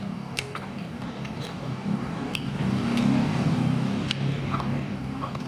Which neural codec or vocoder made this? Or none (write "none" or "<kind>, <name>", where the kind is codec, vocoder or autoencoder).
codec, DAC